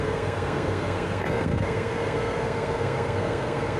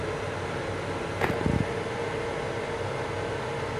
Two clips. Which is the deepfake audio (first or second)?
first